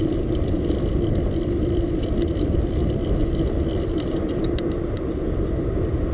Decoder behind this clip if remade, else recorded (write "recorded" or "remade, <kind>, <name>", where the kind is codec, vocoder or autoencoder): recorded